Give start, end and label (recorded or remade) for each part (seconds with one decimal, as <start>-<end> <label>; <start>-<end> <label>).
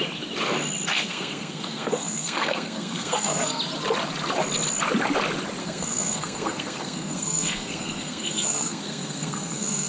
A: 0.0-0.9 recorded; 0.9-3.6 remade; 3.6-5.6 recorded; 5.6-9.9 remade